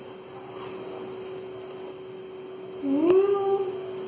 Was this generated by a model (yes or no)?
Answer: no